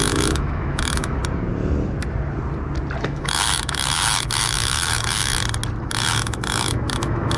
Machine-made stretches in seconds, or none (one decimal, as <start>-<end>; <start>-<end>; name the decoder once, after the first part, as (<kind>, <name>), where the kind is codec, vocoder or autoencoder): 0.0-1.2 (autoencoder, DAC-VAE); 3.0-5.3; 5.8-7.4